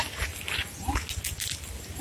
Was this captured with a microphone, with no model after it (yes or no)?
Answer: yes